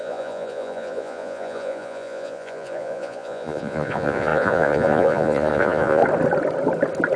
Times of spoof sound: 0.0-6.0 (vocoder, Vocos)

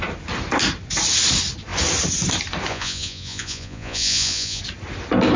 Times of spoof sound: 2.7-4.6 (vocoder, Vocos)

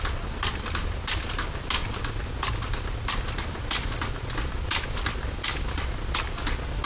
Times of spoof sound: none